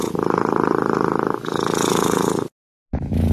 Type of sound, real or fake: real